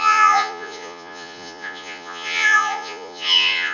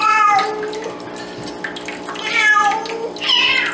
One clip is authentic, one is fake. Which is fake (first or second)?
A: first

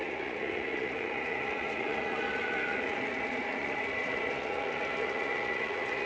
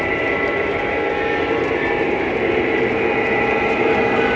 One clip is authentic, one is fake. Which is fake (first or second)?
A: first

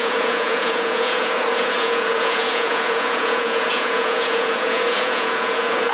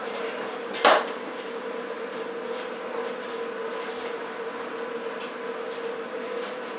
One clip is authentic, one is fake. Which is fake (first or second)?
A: first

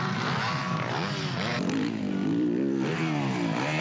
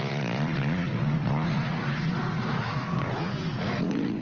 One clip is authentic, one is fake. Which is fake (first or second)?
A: second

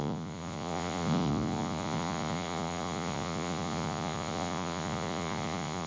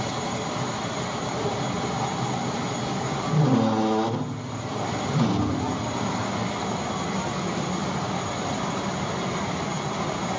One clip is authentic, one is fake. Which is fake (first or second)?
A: first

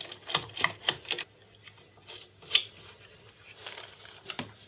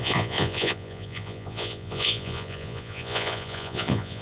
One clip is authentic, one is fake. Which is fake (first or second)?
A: second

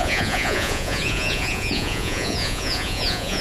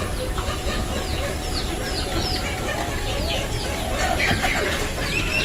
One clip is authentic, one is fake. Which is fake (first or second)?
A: first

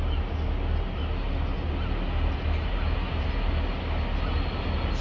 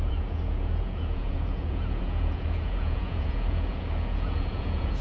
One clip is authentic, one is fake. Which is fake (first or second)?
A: second